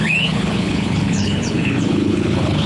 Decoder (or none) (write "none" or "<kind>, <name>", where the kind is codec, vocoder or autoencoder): codec, HILCodec